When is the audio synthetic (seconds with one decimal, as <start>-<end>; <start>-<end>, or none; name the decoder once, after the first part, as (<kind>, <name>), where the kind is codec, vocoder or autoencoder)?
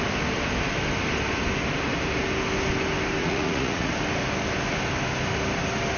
3.2-3.9 (vocoder, Vocos)